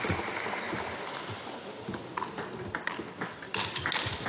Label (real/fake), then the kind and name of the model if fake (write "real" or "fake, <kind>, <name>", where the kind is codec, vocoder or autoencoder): real